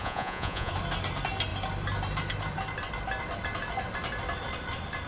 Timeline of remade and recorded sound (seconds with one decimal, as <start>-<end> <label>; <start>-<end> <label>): 0.0-0.7 remade; 0.7-5.1 recorded